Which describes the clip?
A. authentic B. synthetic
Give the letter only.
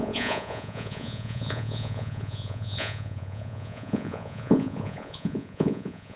B